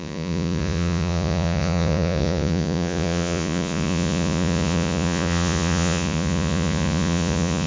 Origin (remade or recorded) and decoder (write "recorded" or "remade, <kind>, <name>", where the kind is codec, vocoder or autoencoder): remade, vocoder, Vocos